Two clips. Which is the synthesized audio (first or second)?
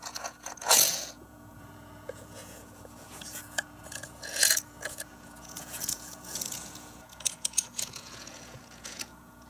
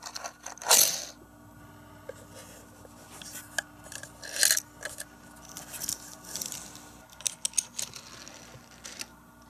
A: first